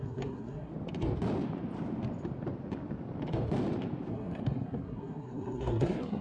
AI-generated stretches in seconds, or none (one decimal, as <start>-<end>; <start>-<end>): 0.0-0.7; 4.1-6.2